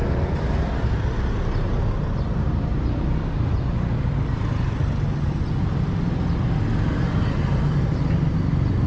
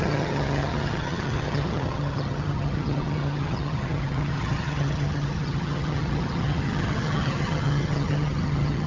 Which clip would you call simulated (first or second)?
second